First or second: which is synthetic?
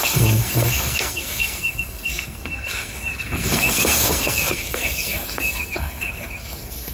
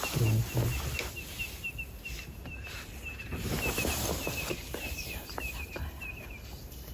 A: first